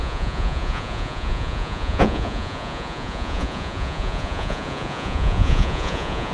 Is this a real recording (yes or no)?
no